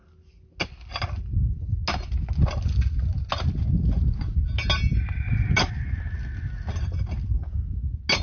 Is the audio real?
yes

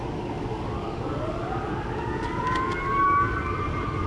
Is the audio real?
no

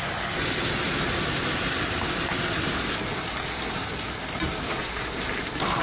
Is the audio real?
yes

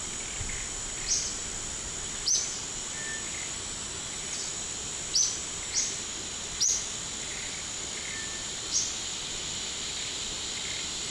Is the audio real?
yes